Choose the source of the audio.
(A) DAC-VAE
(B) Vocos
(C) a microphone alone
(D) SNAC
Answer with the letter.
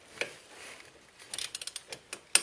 C